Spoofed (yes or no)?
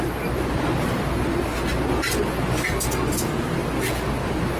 no